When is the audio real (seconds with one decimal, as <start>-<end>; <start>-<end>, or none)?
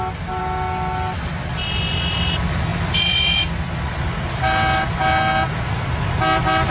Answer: 0.0-6.7